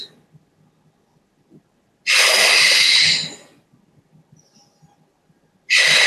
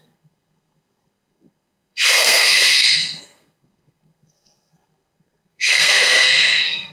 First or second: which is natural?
first